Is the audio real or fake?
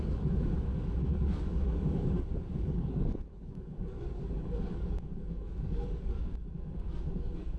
fake